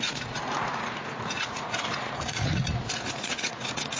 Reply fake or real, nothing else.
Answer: fake